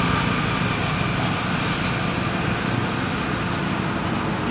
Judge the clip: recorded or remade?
recorded